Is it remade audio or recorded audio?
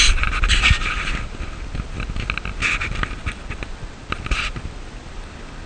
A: recorded